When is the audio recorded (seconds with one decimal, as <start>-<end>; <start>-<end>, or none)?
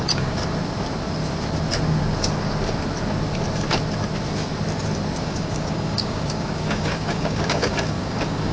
0.4-5.2